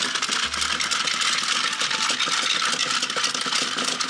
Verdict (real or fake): real